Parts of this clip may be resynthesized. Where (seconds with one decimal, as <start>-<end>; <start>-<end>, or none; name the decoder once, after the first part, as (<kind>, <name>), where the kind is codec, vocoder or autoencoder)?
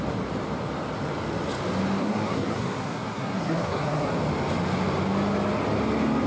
2.0-4.1 (codec, SNAC)